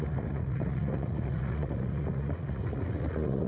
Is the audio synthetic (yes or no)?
yes